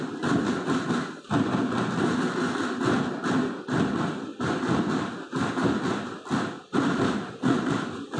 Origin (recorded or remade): recorded